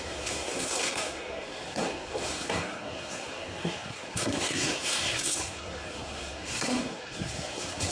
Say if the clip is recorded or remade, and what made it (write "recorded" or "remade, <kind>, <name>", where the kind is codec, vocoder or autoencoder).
remade, codec, SNAC